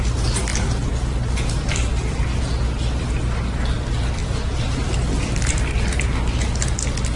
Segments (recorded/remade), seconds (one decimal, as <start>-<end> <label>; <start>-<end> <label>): 0.0-4.2 recorded; 4.2-5.5 remade; 5.5-7.2 recorded